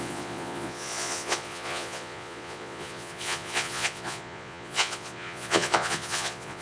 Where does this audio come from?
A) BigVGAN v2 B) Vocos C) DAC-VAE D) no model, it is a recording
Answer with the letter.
B